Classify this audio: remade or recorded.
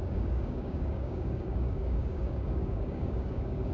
remade